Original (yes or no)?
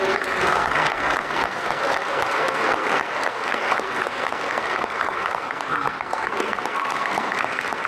no